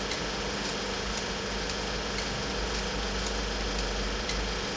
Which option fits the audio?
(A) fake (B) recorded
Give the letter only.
B